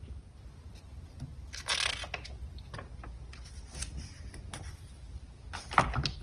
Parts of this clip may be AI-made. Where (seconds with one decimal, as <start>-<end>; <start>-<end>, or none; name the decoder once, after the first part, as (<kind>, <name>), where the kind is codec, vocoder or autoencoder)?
none